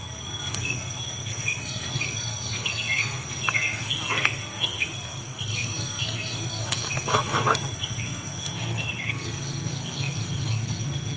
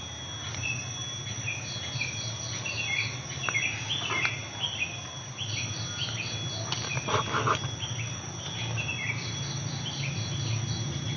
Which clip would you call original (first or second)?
second